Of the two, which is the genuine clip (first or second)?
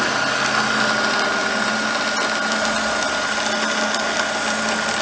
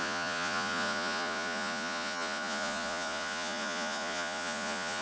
first